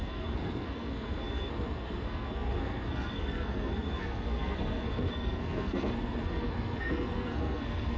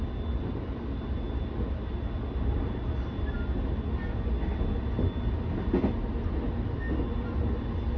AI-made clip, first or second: first